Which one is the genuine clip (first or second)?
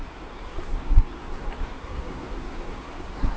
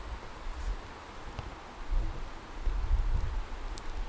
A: second